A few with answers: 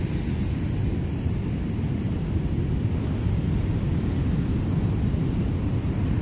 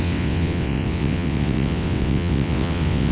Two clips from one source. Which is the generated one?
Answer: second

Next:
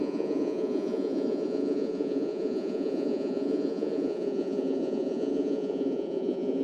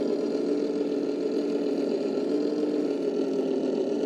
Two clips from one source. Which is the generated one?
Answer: first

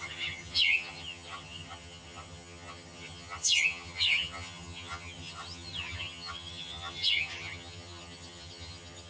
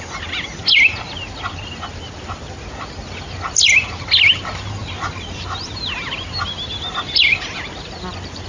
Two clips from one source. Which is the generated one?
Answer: first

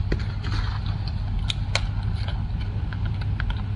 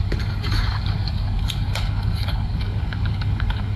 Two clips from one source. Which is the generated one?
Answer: second